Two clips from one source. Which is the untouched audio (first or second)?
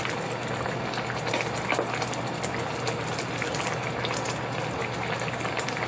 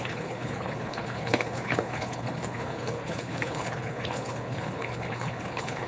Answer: first